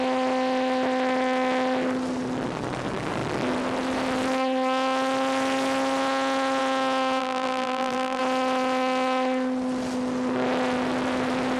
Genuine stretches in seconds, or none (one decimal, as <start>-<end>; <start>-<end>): 0.0-7.2; 8.2-11.6